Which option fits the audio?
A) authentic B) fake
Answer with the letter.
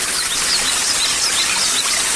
A